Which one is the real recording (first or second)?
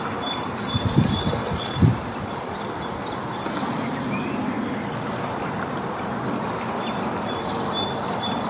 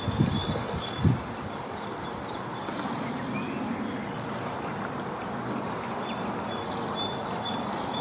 second